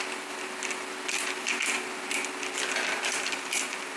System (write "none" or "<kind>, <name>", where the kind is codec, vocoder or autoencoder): none